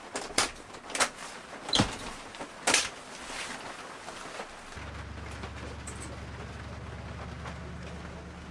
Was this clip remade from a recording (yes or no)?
no